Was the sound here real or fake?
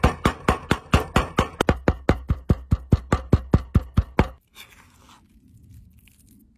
real